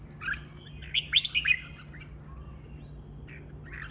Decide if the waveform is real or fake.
real